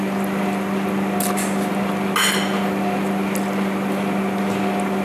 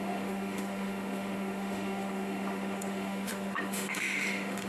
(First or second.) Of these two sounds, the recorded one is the first